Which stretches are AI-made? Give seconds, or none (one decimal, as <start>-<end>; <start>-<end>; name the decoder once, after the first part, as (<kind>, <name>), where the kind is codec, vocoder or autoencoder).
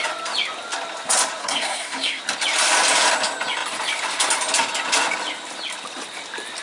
1.4-2.2 (codec, SNAC)